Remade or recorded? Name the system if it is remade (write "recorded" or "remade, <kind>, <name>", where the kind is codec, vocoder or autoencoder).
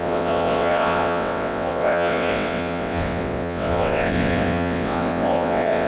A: remade, vocoder, WaveNeXt